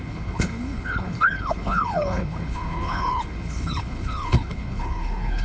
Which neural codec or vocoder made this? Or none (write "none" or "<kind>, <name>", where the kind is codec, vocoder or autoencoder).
codec, HILCodec